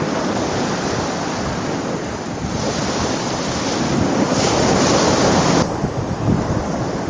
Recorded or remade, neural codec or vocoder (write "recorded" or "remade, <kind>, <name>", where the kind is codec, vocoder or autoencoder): remade, vocoder, BigVGAN v2